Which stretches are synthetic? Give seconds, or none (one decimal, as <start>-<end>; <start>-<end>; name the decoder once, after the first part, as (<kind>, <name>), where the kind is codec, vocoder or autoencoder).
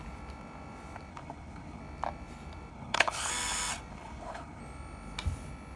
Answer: 1.1-1.8 (codec, HILCodec); 2.7-3.3; 3.9-4.6